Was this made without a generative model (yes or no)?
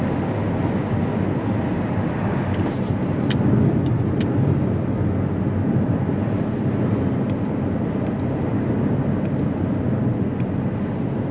yes